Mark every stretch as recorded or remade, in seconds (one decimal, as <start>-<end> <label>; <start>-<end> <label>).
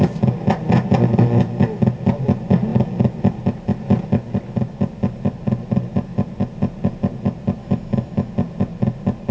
0.0-7.6 recorded; 7.6-8.3 remade; 8.3-9.3 recorded